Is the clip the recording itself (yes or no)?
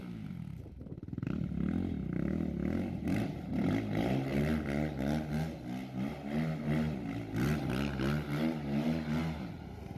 yes